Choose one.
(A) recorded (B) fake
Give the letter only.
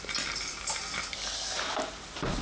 A